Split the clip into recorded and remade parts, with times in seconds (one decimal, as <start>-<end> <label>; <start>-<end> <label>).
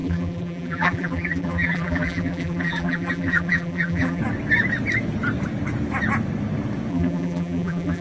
0.0-4.2 remade; 4.2-6.9 recorded; 6.9-8.0 remade